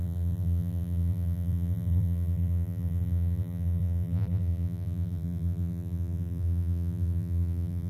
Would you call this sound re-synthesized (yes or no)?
yes